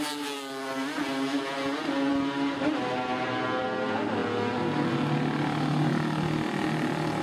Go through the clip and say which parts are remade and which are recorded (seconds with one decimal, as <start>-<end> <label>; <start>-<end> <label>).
0.0-7.2 recorded